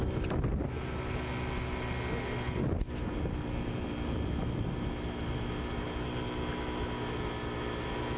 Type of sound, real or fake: real